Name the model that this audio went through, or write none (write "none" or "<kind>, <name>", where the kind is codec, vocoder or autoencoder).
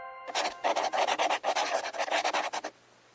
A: none